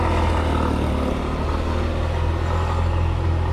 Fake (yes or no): no